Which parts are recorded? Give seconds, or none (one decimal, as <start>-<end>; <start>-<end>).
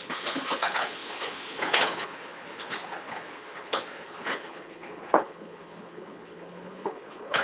none